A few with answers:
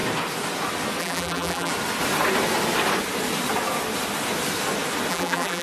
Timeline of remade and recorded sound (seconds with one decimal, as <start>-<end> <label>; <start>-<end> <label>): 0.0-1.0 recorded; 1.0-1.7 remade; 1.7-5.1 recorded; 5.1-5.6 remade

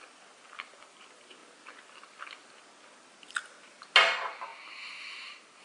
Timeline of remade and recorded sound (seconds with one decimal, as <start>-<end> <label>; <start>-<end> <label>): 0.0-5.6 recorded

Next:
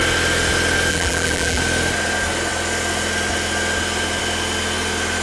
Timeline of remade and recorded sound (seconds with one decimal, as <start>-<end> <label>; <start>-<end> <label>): 0.0-0.9 recorded; 0.9-1.6 remade; 1.6-5.2 recorded

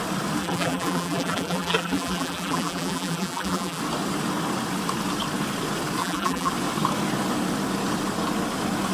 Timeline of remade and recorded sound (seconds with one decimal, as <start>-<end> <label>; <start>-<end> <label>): 0.0-0.4 recorded; 0.4-3.8 remade; 3.8-6.0 recorded; 6.0-6.5 remade; 6.5-8.9 recorded